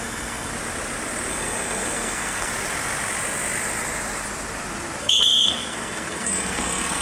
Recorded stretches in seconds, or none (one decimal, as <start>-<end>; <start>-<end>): 0.5-1.3; 2.5-5.0